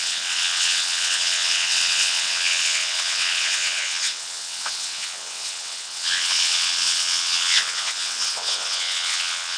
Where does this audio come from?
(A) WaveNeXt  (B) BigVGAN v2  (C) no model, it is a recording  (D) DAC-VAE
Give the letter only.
A